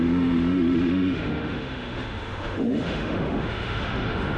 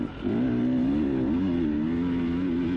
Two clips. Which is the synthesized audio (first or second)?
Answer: first